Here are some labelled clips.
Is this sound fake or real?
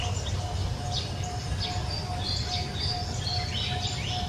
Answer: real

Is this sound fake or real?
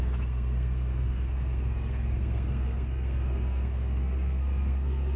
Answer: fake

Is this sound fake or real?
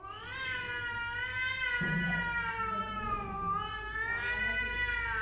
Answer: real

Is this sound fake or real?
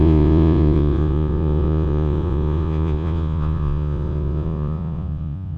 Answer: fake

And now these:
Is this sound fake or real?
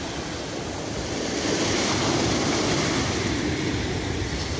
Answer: real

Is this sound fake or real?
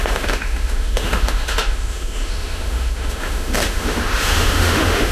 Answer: fake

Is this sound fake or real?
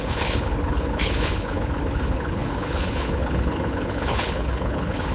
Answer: fake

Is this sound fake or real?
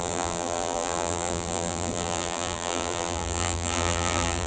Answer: fake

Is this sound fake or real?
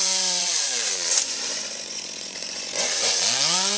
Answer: fake